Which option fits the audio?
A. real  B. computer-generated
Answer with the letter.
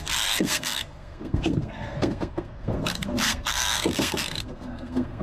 B